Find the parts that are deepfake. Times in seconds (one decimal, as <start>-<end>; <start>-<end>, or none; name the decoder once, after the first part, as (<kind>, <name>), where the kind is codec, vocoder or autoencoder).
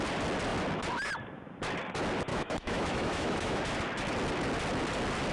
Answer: 2.3-3.6 (autoencoder, DAC-VAE)